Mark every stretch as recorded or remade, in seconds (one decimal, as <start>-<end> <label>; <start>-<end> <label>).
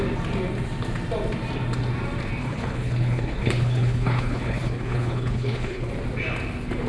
0.0-2.4 recorded; 2.4-5.9 remade; 5.9-6.9 recorded